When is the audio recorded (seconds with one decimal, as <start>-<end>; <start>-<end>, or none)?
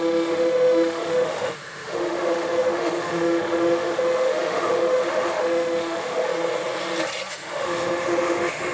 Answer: 6.3-7.3